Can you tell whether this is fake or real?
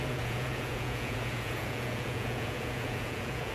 fake